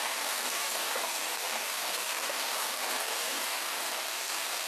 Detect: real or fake fake